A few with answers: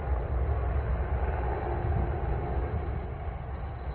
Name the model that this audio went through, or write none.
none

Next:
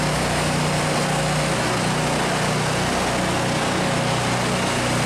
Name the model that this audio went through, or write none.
none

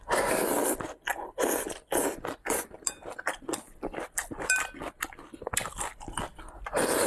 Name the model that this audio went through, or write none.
none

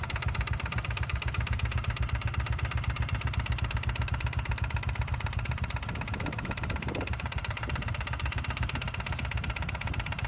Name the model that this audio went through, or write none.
vocoder, BigVGAN v2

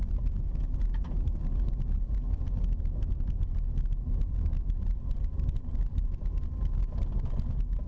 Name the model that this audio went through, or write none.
none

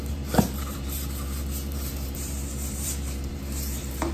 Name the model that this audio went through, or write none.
vocoder, BigVGAN v2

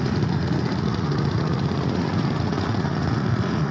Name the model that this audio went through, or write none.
vocoder, Vocos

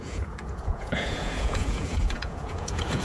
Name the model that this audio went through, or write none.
vocoder, Vocos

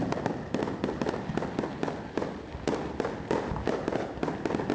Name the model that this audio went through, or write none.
none